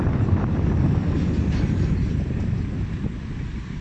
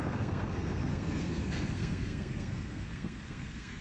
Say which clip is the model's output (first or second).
second